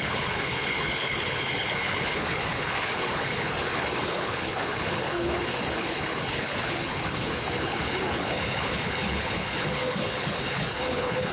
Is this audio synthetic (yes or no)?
yes